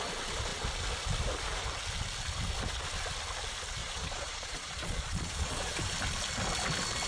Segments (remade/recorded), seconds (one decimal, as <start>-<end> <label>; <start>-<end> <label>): 0.0-3.8 recorded; 3.8-5.8 remade; 5.8-7.1 recorded